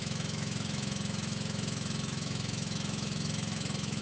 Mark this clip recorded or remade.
remade